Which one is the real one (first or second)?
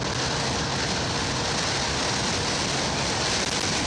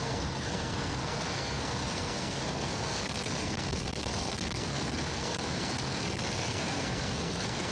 first